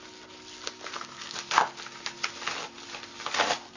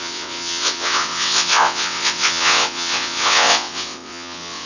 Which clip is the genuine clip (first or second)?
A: first